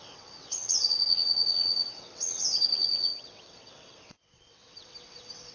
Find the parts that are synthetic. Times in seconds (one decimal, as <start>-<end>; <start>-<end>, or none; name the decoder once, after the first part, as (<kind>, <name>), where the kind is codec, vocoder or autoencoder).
0.0-5.5 (vocoder, WaveNeXt)

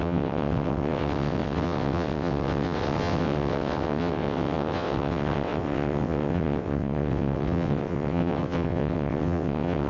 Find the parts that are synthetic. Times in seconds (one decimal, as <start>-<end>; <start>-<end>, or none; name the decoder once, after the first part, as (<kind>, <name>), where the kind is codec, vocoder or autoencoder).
0.0-9.9 (vocoder, WaveNeXt)

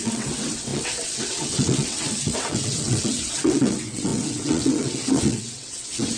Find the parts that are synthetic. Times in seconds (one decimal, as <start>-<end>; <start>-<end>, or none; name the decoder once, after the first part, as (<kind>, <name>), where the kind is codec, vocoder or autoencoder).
0.0-6.2 (vocoder, WaveNeXt)